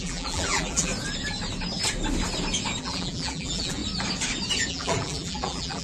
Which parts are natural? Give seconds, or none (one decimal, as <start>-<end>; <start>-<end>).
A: 0.9-2.8; 3.8-4.7